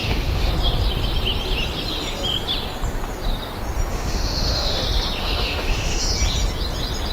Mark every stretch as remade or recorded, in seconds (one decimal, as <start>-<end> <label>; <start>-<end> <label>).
0.0-0.5 remade; 0.5-3.9 recorded; 3.9-4.8 remade; 4.8-5.2 recorded; 5.2-6.0 remade; 6.0-7.1 recorded